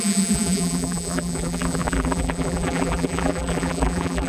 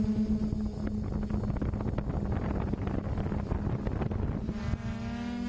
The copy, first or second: first